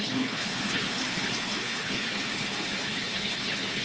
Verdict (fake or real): fake